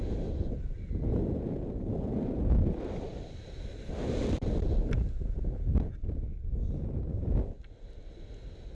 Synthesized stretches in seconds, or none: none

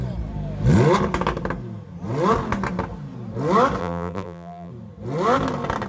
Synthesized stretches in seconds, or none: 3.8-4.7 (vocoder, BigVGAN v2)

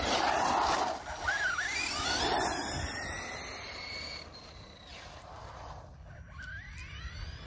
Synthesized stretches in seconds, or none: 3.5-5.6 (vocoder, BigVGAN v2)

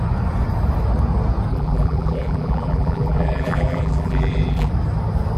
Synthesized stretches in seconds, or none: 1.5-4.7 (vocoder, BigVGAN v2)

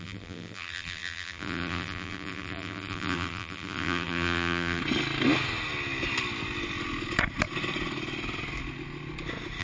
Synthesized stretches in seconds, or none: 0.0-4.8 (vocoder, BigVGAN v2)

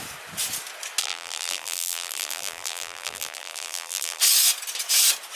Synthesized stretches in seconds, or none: 1.0-4.2 (vocoder, BigVGAN v2)